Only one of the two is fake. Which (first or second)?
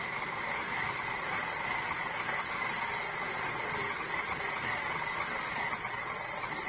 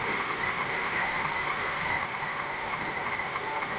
second